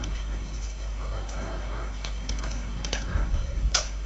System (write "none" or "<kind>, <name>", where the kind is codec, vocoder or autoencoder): codec, SNAC